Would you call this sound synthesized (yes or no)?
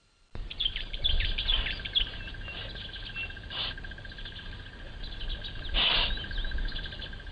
no